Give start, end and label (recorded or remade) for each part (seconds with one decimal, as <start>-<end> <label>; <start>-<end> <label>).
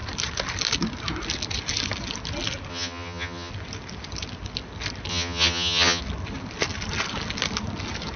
0.0-2.7 recorded; 2.7-3.5 remade; 3.5-5.1 recorded; 5.1-6.0 remade; 6.0-8.2 recorded